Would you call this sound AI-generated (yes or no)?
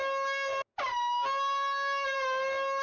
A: no